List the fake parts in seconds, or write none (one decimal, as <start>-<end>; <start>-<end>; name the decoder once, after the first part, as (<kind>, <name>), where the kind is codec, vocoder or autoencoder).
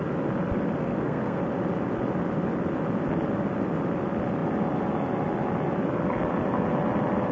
0.8-1.4 (codec, SNAC)